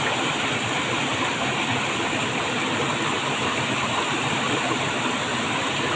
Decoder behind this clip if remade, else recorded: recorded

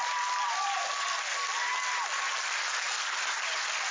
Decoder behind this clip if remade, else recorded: recorded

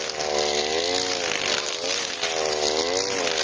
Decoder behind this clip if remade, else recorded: recorded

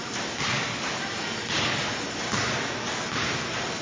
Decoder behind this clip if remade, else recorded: recorded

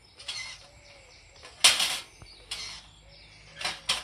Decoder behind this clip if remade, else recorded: recorded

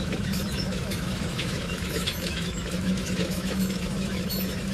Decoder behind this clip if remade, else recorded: remade, autoencoder, DAC-VAE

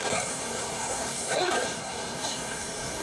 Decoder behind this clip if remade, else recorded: remade, codec, SNAC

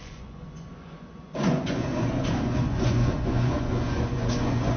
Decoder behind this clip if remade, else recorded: remade, vocoder, Vocos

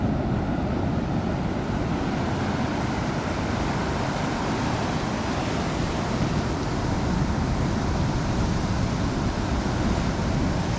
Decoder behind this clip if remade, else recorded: recorded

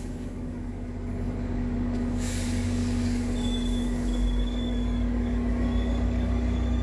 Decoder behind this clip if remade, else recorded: remade, codec, DAC